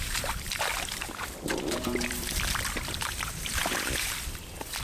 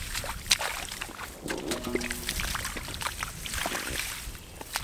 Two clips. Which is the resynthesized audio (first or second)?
first